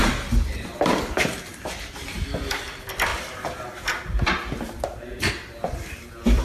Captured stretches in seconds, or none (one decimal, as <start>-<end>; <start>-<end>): 3.1-5.3